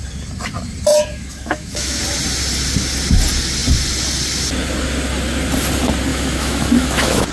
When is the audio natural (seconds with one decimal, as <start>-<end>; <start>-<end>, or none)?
0.0-0.9; 2.0-6.1